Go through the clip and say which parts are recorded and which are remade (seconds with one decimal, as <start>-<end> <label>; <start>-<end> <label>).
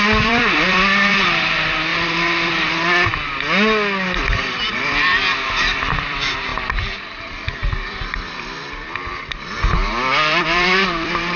0.0-1.9 remade; 1.9-4.6 recorded; 4.6-11.4 remade